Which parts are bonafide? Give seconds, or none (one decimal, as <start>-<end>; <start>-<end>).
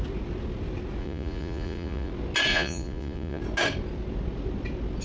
0.0-1.0; 2.1-2.5; 3.4-5.0